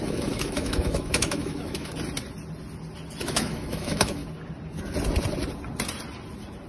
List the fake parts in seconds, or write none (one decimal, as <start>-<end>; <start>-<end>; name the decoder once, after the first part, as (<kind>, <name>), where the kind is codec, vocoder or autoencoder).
0.0-1.9 (autoencoder, DAC-VAE); 3.2-4.2